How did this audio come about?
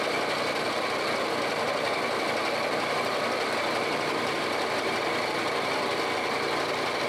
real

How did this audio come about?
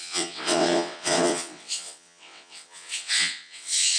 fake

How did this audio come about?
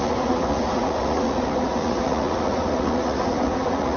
fake